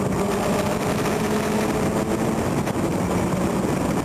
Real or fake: real